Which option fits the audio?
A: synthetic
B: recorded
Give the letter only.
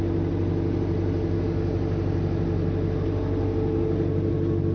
B